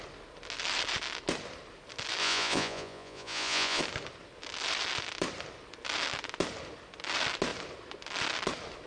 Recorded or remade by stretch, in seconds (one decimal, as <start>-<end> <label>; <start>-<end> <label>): 0.0-2.2 recorded; 2.2-3.8 remade; 3.8-8.9 recorded